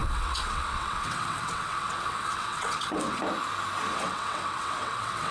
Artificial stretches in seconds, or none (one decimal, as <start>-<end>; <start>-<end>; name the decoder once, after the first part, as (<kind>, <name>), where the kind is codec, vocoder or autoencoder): 0.0-3.2 (vocoder, WaveNeXt); 3.9-5.3